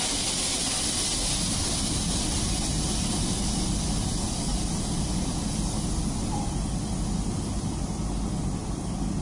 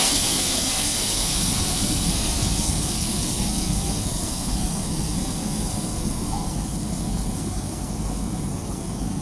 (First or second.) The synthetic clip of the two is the second